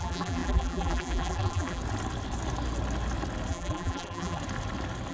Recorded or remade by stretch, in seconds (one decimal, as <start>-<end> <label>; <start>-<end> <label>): 0.0-1.8 remade; 1.8-3.5 recorded; 3.5-4.4 remade; 4.4-5.1 recorded